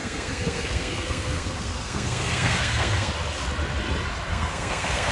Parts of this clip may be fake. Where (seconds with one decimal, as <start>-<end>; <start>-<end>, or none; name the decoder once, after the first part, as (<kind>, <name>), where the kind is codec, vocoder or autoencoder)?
0.0-3.1 (codec, SNAC); 4.3-5.1